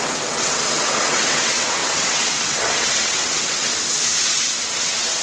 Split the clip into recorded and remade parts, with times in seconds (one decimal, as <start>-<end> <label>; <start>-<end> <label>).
0.0-3.7 remade; 3.7-4.2 recorded; 4.2-5.2 remade